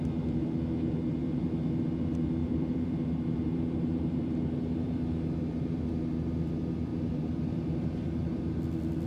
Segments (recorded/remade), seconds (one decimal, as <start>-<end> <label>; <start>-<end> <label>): 0.0-1.2 recorded; 1.2-1.8 remade; 1.8-2.4 recorded; 2.4-5.8 remade; 5.8-6.9 recorded; 6.9-8.5 remade; 8.5-9.1 recorded